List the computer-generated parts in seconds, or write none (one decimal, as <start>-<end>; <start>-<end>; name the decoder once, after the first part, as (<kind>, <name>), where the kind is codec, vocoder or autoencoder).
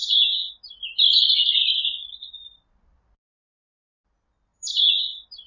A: 0.0-0.5 (vocoder, Vocos)